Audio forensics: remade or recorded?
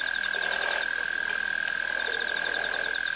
recorded